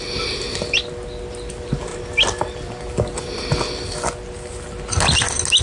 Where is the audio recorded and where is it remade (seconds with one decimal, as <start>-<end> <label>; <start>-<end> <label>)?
0.0-5.6 recorded